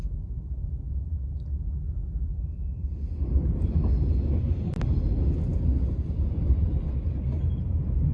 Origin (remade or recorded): recorded